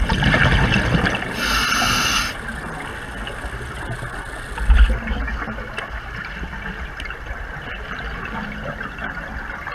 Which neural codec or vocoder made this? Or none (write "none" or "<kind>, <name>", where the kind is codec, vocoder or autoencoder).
none